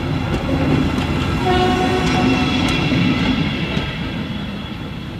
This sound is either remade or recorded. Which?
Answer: recorded